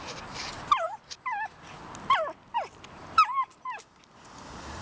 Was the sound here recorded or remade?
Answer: recorded